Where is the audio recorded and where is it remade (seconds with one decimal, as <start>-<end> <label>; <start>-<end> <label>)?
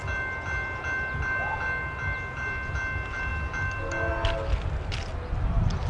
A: 0.0-5.9 recorded